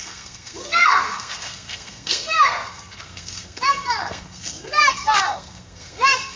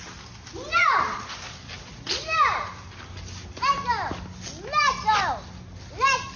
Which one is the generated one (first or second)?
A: first